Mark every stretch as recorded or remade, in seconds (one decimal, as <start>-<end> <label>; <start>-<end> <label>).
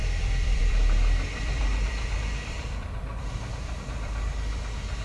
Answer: 0.0-5.0 remade